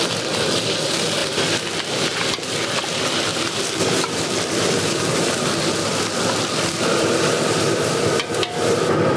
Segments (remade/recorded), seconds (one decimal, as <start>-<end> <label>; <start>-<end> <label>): 0.0-3.3 recorded; 3.3-8.0 remade; 8.0-9.2 recorded